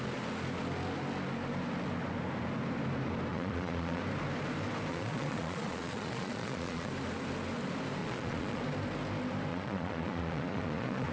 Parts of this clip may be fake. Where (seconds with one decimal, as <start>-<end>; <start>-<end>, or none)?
3.3-4.0; 4.9-6.9; 8.0-8.6; 9.5-11.1